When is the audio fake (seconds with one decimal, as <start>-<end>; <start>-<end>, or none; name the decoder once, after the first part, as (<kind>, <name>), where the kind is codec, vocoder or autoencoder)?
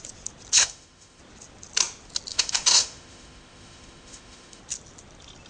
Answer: 0.6-1.2 (autoencoder, DAC-VAE); 2.3-4.6